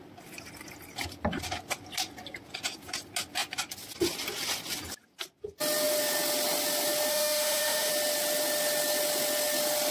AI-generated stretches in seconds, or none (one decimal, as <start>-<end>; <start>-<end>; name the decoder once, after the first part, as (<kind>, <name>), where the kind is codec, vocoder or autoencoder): 7.1-7.9 (autoencoder, DAC-VAE)